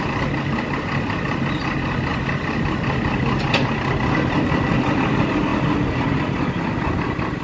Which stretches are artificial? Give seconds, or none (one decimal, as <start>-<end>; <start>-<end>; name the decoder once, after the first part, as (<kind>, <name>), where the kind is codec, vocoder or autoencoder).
none